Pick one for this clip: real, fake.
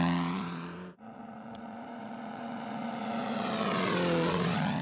fake